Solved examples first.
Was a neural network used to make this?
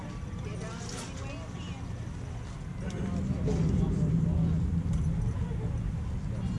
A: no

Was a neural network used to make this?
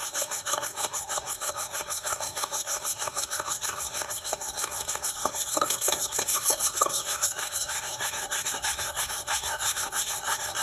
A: yes